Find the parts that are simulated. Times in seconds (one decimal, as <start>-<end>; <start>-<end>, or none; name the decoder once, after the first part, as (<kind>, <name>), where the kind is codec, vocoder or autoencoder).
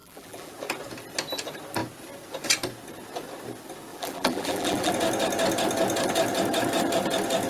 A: 0.0-0.5 (vocoder, BigVGAN v2); 3.9-4.9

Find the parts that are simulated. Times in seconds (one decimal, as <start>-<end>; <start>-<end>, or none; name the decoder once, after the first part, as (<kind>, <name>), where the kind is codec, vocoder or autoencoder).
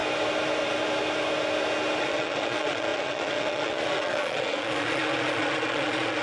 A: 2.0-6.2 (vocoder, Vocos)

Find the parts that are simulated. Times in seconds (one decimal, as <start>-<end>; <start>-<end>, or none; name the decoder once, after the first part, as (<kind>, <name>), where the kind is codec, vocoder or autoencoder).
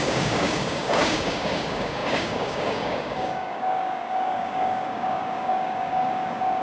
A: 0.0-6.6 (codec, DAC)